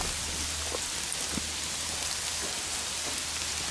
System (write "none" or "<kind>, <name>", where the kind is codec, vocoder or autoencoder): none